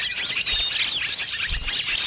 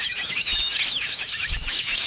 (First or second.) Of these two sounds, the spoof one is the second